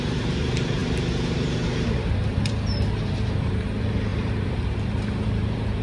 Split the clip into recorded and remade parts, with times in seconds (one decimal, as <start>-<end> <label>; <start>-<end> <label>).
0.0-5.8 remade